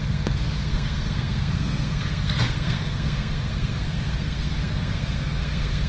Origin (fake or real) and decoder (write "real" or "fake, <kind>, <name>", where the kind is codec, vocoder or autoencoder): fake, codec, SNAC